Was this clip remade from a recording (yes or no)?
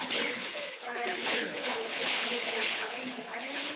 yes